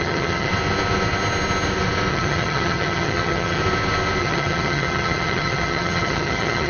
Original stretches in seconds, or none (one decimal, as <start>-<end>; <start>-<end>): 0.5-2.1; 3.6-4.2

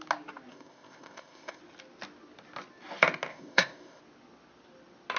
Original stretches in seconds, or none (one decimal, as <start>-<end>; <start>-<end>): 0.0-0.5; 1.6-3.3; 4.0-5.2